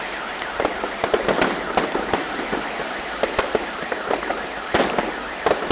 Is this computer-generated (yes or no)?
no